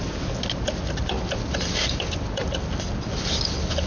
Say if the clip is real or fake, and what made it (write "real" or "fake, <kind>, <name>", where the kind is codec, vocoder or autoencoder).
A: real